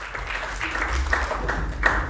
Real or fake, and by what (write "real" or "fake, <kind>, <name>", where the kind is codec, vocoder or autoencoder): real